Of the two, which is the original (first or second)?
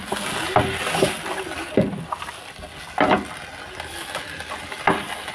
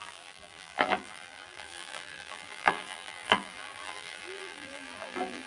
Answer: first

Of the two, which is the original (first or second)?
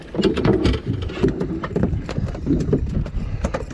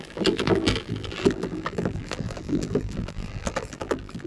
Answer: first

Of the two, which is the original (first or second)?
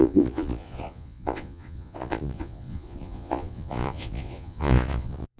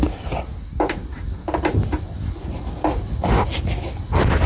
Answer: second